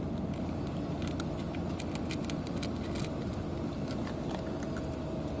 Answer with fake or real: real